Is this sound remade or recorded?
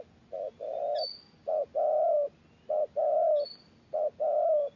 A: recorded